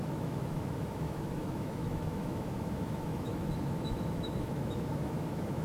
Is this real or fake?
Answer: fake